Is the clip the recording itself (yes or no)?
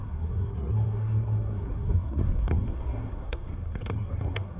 no